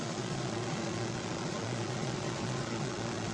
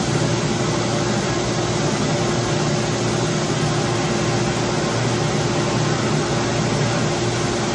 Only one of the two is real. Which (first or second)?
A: second